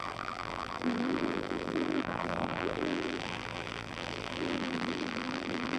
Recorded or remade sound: remade